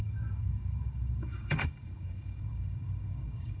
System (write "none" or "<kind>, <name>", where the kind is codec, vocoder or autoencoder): codec, DAC